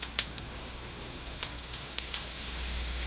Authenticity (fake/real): fake